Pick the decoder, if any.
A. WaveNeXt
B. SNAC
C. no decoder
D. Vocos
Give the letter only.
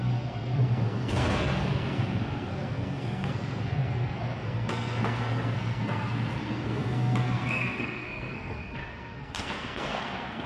B